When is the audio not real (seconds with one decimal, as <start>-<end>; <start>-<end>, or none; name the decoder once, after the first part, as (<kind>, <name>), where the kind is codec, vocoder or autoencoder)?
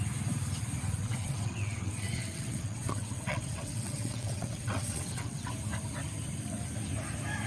1.0-5.5 (vocoder, WaveNeXt)